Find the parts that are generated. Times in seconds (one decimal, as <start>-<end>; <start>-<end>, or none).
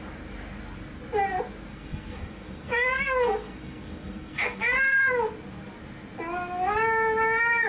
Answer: 1.7-5.1